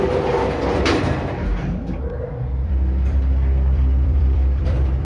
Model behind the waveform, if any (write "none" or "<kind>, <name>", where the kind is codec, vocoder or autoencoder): vocoder, BigVGAN v2